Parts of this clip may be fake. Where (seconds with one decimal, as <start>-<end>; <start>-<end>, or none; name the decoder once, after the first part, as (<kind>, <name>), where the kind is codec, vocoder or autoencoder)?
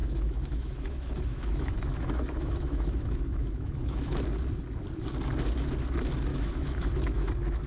0.0-4.2 (autoencoder, DAC-VAE); 6.3-7.3